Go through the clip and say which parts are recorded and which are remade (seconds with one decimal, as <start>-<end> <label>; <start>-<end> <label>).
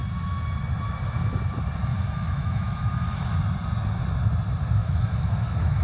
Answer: 0.0-1.9 recorded; 1.9-3.4 remade; 3.4-4.8 recorded; 4.8-5.8 remade